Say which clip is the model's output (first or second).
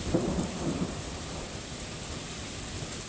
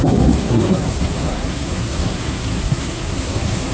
second